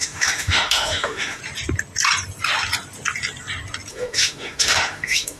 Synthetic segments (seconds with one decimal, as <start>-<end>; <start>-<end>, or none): 0.0-1.4; 3.9-5.4